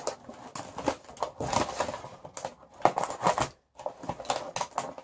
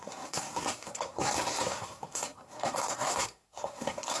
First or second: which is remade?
second